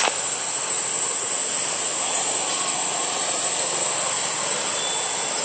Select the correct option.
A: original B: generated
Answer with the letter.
A